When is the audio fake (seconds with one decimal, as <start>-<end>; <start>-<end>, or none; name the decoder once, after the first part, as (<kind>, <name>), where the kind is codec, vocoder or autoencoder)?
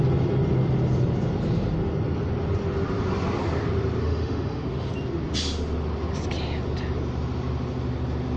4.0-4.9 (autoencoder, DAC-VAE)